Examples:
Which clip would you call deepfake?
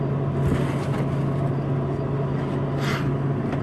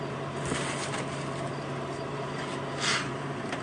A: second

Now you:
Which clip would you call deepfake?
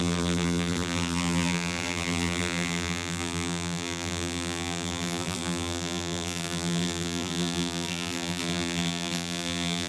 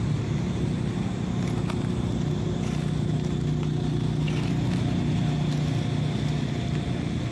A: first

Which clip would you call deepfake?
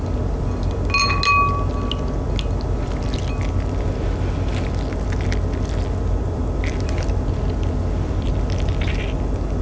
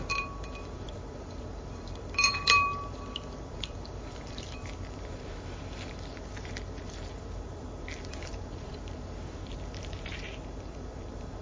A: second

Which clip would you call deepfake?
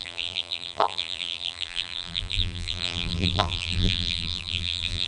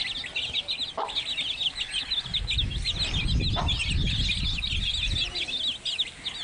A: first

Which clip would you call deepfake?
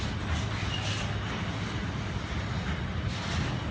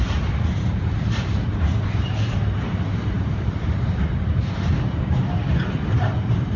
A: second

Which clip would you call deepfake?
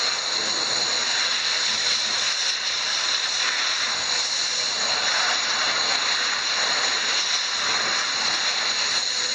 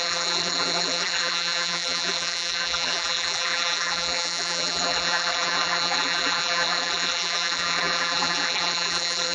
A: second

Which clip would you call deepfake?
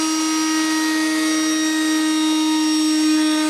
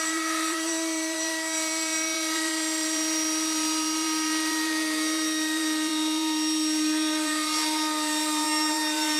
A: second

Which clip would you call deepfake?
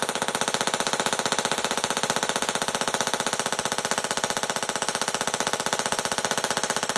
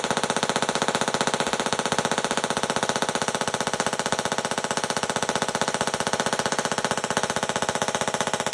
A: second